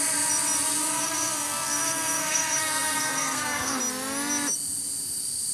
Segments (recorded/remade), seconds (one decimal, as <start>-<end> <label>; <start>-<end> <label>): 0.0-0.8 recorded; 0.8-3.8 remade; 3.8-5.5 recorded